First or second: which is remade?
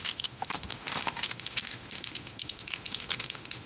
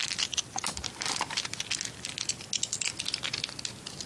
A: first